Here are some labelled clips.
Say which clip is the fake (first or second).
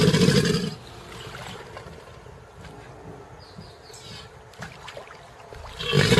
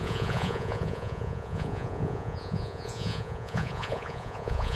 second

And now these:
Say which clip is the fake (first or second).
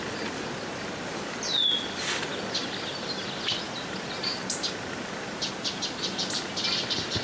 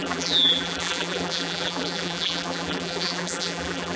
second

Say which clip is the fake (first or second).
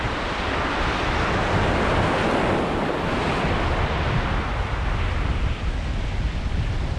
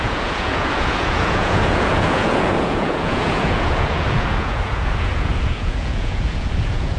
second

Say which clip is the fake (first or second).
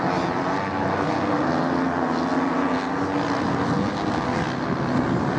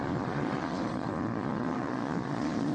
second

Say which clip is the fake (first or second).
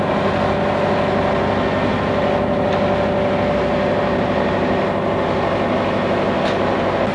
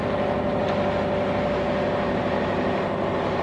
second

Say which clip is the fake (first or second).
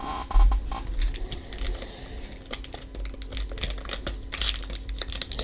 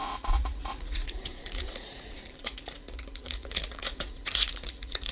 second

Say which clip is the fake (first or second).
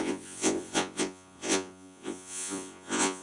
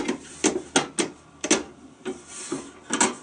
first